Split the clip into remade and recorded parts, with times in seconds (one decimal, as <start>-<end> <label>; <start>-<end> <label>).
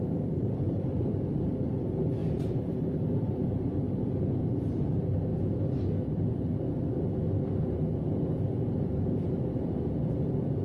0.0-5.3 remade; 5.3-8.2 recorded; 8.2-10.6 remade